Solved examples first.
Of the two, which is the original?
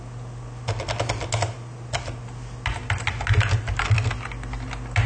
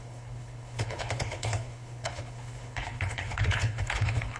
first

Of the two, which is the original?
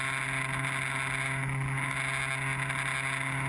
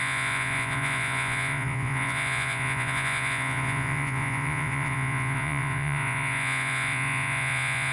first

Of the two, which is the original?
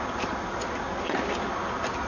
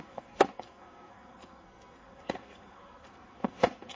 first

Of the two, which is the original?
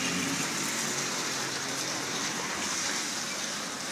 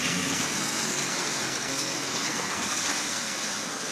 first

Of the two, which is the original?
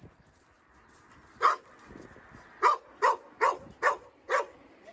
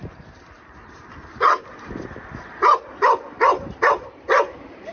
first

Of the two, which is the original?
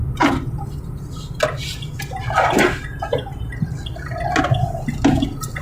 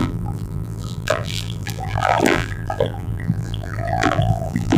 first